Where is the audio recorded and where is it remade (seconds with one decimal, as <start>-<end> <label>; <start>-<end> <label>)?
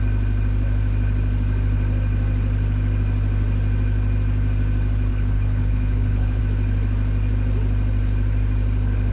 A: 0.0-5.1 recorded; 5.1-6.4 remade; 6.4-9.1 recorded